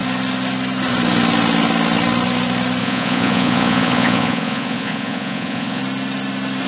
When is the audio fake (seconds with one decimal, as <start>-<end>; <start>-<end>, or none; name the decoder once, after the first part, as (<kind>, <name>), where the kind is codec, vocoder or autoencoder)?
2.8-5.8 (vocoder, Vocos)